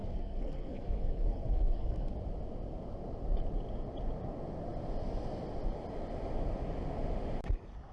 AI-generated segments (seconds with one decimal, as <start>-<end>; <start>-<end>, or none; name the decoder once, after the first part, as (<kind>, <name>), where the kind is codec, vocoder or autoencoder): 0.0-2.1 (codec, SNAC)